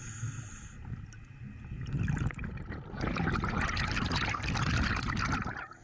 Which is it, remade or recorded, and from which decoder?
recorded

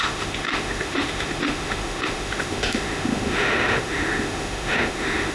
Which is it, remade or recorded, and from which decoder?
remade, autoencoder, DAC-VAE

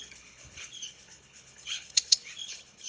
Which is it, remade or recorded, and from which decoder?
remade, codec, HILCodec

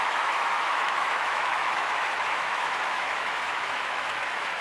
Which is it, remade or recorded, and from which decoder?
remade, autoencoder, DAC-VAE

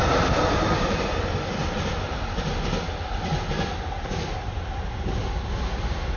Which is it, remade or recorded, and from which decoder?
recorded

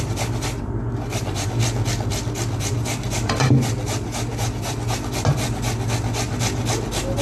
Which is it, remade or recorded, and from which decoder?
recorded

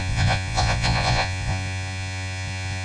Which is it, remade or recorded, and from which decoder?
remade, vocoder, Vocos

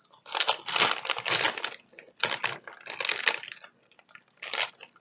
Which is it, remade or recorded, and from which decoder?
recorded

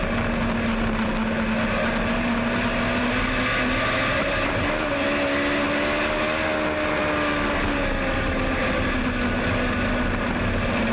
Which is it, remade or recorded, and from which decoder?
recorded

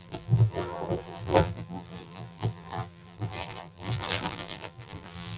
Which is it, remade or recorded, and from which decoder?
remade, vocoder, BigVGAN v2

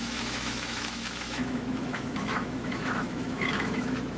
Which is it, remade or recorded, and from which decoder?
remade, autoencoder, DAC-VAE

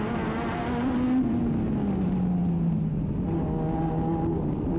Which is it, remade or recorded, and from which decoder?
recorded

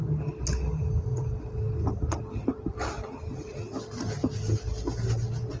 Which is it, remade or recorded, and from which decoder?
recorded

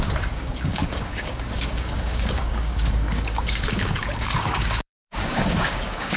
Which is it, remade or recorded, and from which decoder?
remade, codec, DAC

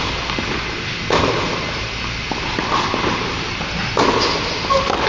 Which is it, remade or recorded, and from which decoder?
recorded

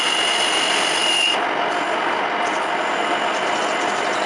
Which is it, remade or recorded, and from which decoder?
recorded